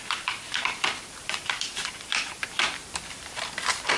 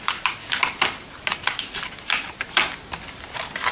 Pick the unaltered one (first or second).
second